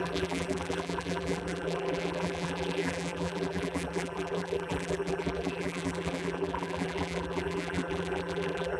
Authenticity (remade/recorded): remade